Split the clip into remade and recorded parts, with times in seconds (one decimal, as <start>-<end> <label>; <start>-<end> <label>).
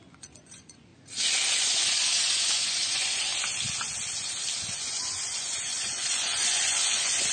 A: 0.0-0.9 remade; 0.9-1.5 recorded; 1.5-3.3 remade; 3.3-4.7 recorded; 4.7-7.3 remade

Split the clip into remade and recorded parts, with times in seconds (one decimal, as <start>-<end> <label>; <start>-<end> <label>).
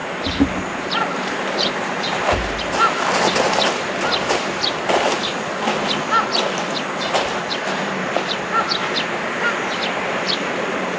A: 0.0-2.6 remade; 2.6-11.0 recorded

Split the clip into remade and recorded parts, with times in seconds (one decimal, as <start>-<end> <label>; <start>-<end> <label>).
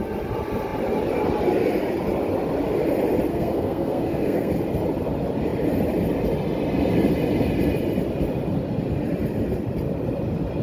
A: 0.0-3.3 recorded; 3.3-4.5 remade; 4.5-10.6 recorded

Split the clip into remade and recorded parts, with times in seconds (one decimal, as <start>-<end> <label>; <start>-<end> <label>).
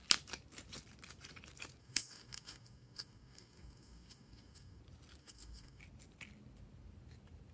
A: 0.0-1.8 recorded; 1.8-4.8 remade; 4.8-5.2 recorded; 5.2-5.8 remade; 5.8-7.5 recorded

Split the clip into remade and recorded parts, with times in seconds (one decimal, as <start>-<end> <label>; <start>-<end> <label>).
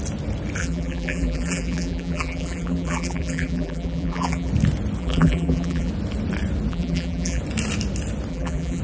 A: 0.0-0.6 recorded; 0.6-4.5 remade; 4.5-5.0 recorded; 5.0-5.9 remade; 5.9-6.7 recorded; 6.7-7.4 remade; 7.4-8.3 recorded; 8.3-8.8 remade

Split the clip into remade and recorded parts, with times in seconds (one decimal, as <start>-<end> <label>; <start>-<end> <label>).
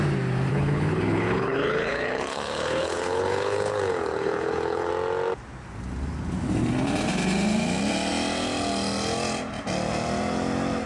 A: 0.0-0.5 recorded; 0.5-4.9 remade; 4.9-10.9 recorded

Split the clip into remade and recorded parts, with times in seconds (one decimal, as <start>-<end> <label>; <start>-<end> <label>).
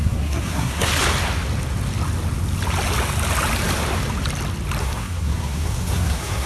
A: 0.0-0.9 remade; 0.9-4.8 recorded; 4.8-6.5 remade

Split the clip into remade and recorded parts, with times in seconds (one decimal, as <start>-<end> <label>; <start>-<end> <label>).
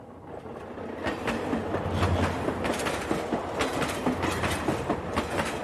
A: 0.0-5.6 recorded